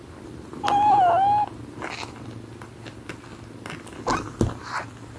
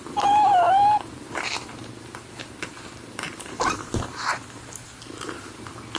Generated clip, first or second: second